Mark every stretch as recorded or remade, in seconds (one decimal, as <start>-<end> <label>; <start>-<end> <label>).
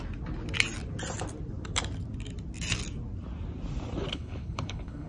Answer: 0.0-4.1 recorded; 4.1-5.1 remade